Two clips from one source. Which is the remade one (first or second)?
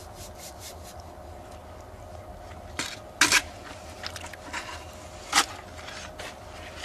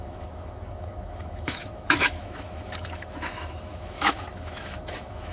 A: second